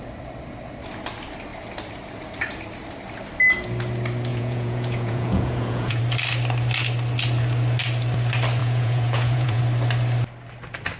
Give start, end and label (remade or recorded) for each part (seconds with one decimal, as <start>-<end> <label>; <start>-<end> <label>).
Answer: 0.0-4.3 recorded; 4.3-6.0 remade; 6.0-8.6 recorded; 8.6-9.6 remade; 9.6-11.0 recorded